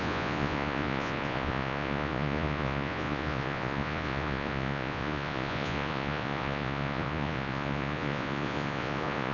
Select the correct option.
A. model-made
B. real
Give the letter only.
A